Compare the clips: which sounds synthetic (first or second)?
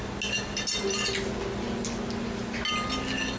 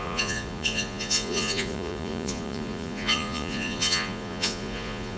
second